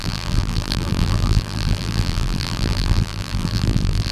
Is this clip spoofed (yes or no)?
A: yes